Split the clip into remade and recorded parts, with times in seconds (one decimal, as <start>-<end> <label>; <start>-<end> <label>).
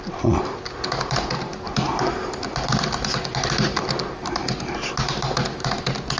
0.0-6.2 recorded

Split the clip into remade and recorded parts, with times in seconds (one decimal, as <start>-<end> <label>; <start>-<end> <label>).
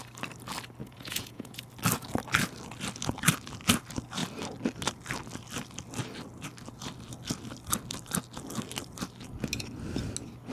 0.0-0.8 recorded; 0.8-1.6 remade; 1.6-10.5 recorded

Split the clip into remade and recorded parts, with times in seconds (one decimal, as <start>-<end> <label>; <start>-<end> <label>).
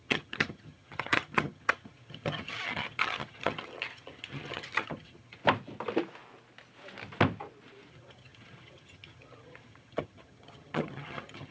0.0-5.4 remade; 5.4-7.9 recorded; 7.9-11.5 remade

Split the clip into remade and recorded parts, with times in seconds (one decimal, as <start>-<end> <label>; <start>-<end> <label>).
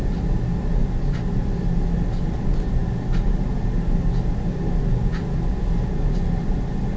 0.0-7.0 recorded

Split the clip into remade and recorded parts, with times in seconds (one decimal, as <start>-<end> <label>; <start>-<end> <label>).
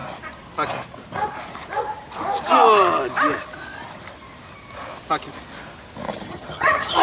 0.0-6.1 recorded; 6.1-7.0 remade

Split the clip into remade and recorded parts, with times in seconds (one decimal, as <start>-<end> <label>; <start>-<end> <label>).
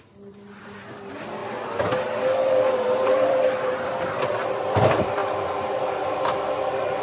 0.0-1.4 remade; 1.4-2.0 recorded; 2.0-5.2 remade; 5.2-5.8 recorded; 5.8-7.0 remade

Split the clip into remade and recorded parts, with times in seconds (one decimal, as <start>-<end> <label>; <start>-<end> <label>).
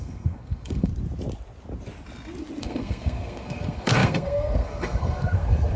0.0-0.9 remade; 0.9-2.6 recorded; 2.6-5.8 remade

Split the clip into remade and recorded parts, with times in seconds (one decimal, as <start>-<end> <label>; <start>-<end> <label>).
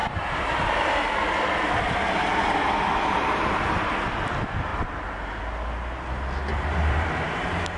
0.0-1.1 remade; 1.1-4.7 recorded; 4.7-5.4 remade; 5.4-6.5 recorded; 6.5-7.8 remade